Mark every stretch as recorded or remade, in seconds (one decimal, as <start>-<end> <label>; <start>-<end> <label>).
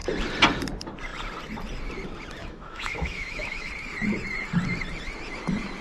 0.0-2.4 recorded; 2.4-3.7 remade; 3.7-5.8 recorded